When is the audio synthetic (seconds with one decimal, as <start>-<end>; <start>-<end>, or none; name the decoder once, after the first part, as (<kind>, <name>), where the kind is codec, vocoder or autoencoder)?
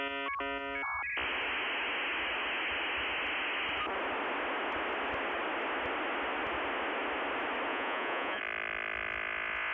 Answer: 7.7-8.4 (vocoder, Vocos)